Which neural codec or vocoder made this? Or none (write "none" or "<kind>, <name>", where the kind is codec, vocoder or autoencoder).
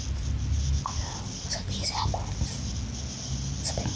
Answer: none